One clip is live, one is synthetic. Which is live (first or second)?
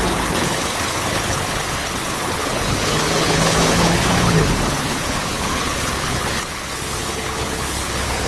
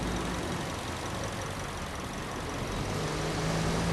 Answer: second